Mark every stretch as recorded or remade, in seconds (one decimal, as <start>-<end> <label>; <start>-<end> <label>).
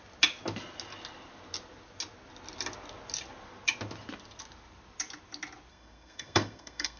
0.0-5.7 recorded; 5.7-7.0 remade